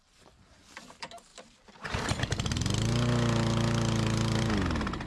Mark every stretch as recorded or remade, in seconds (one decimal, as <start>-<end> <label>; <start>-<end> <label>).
0.0-5.1 recorded